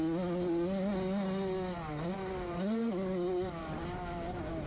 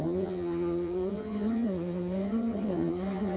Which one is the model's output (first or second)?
second